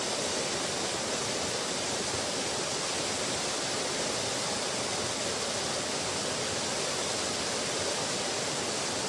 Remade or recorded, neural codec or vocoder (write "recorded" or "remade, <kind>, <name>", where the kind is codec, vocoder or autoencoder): recorded